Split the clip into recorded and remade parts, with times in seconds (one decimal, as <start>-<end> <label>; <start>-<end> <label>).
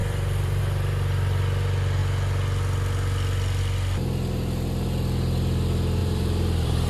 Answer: 0.0-0.6 remade; 0.6-6.0 recorded; 6.0-6.9 remade